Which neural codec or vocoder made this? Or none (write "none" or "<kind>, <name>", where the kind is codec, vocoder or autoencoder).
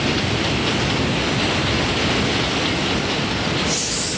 none